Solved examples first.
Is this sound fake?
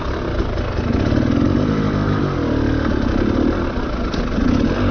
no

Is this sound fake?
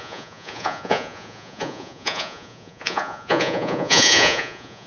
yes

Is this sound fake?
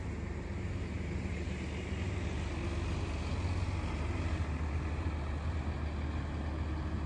no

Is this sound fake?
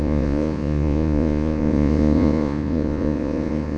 yes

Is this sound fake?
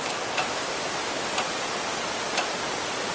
no